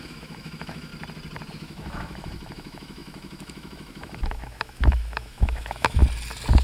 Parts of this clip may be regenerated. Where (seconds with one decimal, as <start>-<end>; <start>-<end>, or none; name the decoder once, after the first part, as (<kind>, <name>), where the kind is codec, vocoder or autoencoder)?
0.0-0.9 (autoencoder, DAC-VAE); 1.5-6.0